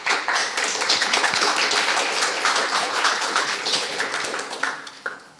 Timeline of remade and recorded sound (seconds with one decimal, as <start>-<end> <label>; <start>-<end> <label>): 0.0-0.4 remade; 0.4-0.9 recorded; 0.9-1.5 remade; 1.5-2.8 recorded; 2.8-4.1 remade; 4.1-4.9 recorded; 4.9-5.4 remade

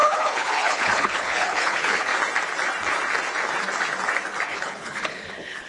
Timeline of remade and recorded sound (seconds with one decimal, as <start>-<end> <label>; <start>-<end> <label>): 0.0-2.1 remade; 2.1-4.5 recorded; 4.5-5.7 remade